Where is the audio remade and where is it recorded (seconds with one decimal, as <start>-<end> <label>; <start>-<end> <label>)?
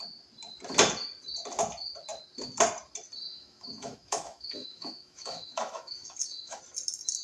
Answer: 0.0-3.3 recorded; 3.3-6.6 remade; 6.6-7.2 recorded